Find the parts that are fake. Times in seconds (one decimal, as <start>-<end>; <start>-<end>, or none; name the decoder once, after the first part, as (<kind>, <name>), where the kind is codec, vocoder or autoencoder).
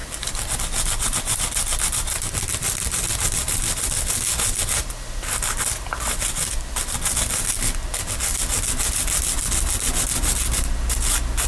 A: none